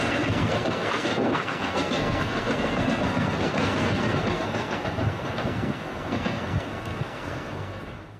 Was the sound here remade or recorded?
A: remade